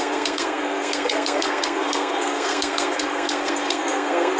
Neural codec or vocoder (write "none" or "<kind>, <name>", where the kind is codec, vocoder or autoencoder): codec, SNAC